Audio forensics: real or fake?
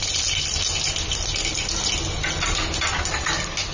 real